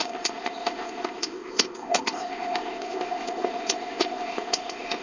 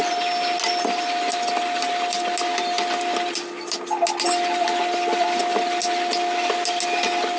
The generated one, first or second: first